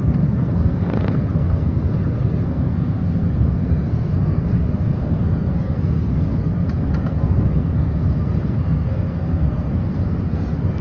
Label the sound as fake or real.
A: fake